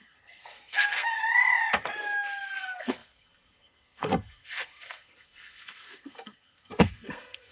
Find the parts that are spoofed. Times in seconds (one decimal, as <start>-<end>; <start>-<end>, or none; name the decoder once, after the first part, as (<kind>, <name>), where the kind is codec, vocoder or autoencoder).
0.0-1.2 (codec, SNAC); 2.6-7.5